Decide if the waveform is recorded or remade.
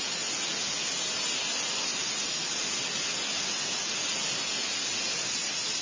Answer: recorded